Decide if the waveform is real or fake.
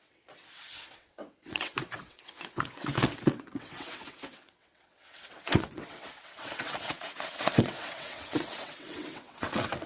fake